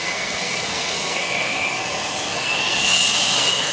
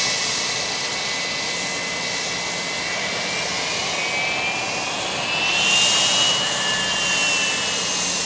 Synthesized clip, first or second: first